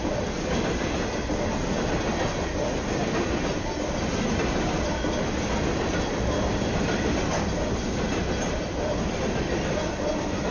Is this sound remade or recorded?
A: recorded